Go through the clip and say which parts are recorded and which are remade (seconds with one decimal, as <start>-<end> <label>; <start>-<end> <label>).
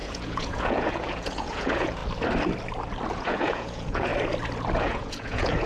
0.0-2.0 remade; 2.0-3.1 recorded; 3.1-4.1 remade; 4.1-4.8 recorded; 4.8-5.7 remade